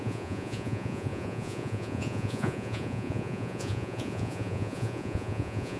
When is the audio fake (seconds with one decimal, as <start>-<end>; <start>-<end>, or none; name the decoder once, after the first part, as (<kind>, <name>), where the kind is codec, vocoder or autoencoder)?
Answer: 0.0-5.8 (vocoder, Vocos)